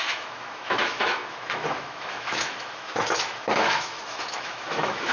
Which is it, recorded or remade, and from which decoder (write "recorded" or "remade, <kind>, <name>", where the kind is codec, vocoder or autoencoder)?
remade, autoencoder, DAC-VAE